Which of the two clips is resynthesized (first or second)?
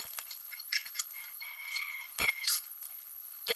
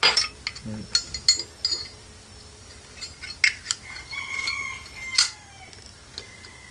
first